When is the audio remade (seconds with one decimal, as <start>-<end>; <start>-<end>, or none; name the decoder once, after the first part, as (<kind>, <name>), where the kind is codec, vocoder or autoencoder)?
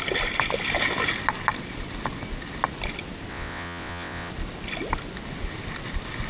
3.3-4.3 (vocoder, WaveNeXt)